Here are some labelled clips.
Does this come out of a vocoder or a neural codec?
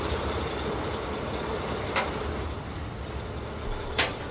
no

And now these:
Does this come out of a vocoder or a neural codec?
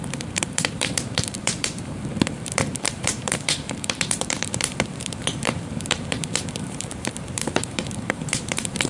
yes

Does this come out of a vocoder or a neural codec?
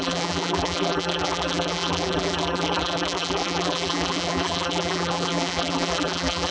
yes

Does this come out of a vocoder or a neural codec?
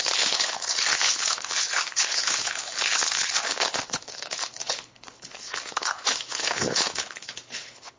yes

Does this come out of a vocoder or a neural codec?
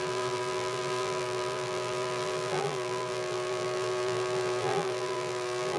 yes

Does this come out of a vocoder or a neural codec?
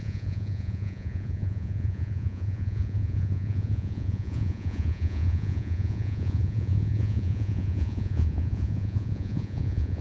yes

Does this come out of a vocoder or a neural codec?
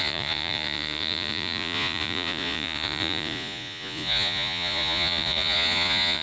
yes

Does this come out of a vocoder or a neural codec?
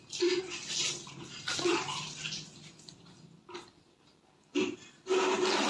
no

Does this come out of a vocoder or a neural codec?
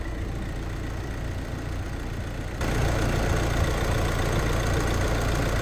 no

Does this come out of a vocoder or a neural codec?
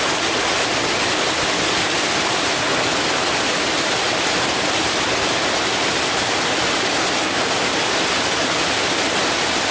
no